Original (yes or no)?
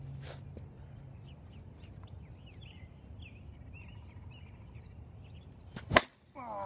yes